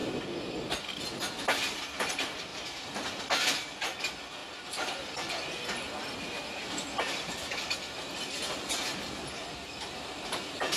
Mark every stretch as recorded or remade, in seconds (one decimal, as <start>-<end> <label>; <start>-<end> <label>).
0.0-2.5 recorded; 2.5-3.2 remade; 3.2-4.4 recorded; 4.4-7.8 remade; 7.8-10.8 recorded